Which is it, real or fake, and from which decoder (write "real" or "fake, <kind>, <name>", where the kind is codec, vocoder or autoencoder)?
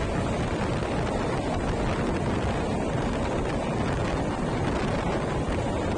real